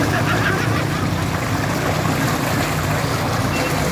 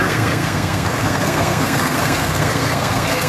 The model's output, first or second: second